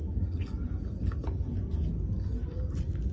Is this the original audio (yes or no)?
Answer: yes